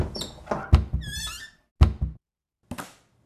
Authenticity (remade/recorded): recorded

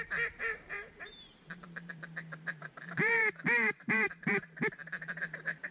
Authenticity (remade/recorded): remade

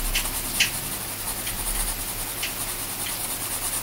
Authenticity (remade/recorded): recorded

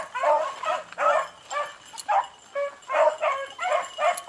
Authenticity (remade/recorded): recorded